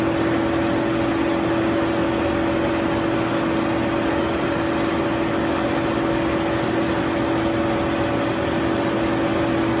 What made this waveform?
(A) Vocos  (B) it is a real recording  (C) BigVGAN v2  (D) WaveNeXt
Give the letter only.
B